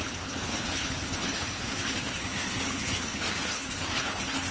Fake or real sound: fake